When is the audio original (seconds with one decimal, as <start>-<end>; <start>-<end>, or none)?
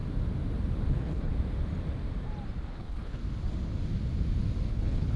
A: 0.0-0.9; 1.3-2.7; 3.2-4.7